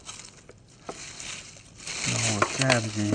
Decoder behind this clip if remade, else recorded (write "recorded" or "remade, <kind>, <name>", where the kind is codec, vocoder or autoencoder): recorded